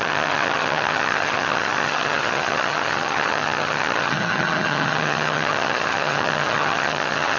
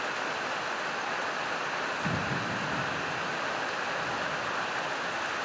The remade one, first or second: first